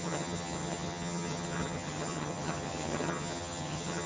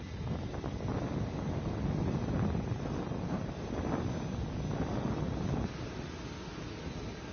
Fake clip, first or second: first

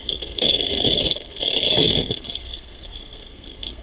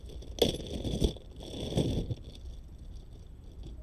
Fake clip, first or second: first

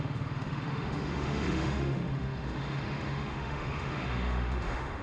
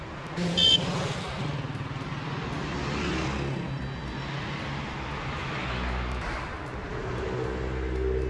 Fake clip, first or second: first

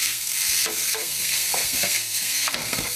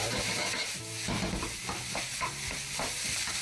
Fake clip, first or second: first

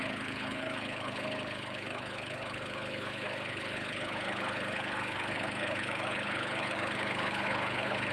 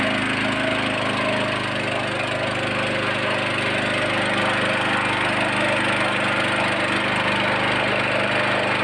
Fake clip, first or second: first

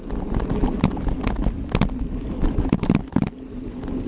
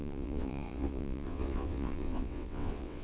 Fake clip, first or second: second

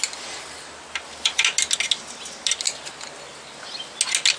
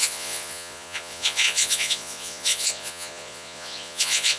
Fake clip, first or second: second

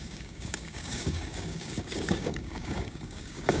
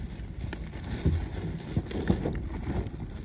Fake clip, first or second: first